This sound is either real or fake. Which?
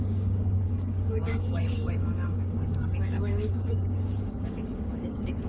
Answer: fake